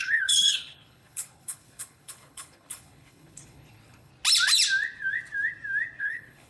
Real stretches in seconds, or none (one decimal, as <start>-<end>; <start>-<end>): 4.1-6.0